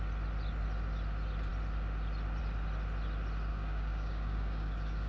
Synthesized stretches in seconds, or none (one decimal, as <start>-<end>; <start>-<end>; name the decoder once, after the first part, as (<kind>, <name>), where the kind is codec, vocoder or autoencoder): 3.5-5.1 (codec, DAC)